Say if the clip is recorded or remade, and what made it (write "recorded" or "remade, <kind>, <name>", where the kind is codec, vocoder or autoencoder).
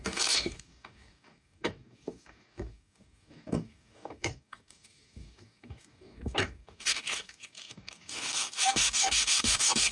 remade, codec, DAC